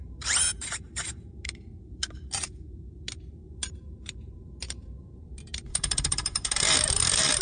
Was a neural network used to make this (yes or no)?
yes